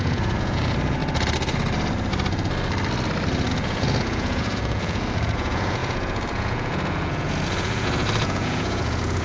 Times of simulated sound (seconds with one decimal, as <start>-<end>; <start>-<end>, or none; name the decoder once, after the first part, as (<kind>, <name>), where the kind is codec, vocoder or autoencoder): 0.0-1.0 (vocoder, Vocos); 3.5-9.2